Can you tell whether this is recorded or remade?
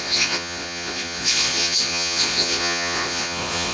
remade